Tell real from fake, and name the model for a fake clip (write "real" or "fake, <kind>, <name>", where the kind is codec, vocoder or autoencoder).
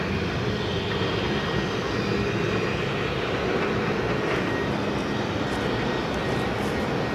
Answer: real